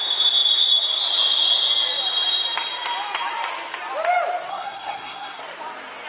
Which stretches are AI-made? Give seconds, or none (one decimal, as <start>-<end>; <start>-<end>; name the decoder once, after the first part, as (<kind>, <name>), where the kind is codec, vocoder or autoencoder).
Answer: 4.5-5.4 (codec, SNAC)